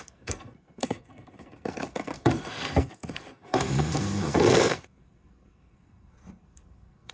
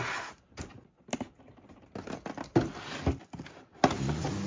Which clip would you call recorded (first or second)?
second